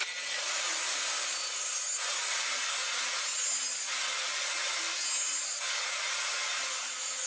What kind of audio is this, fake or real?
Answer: real